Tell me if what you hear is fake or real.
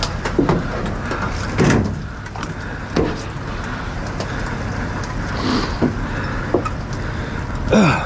real